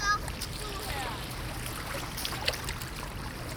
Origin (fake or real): real